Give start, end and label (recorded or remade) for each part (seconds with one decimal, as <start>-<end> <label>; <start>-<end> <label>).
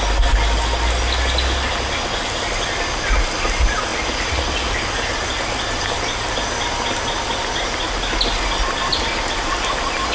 0.0-10.1 recorded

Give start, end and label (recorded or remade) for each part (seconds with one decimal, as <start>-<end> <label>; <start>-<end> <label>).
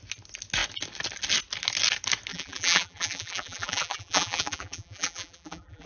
0.0-2.3 recorded; 2.3-5.9 remade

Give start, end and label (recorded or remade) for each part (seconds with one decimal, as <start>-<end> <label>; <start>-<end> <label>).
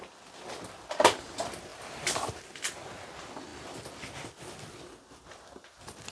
0.0-1.7 recorded; 1.7-2.4 remade; 2.4-6.1 recorded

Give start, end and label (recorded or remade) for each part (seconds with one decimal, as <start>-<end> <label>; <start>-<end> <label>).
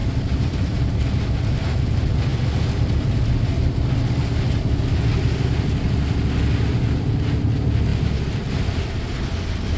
0.0-0.9 remade; 0.9-9.8 recorded